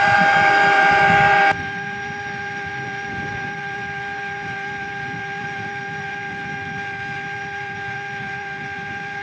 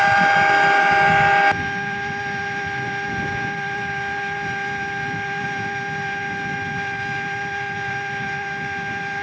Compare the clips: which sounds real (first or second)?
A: second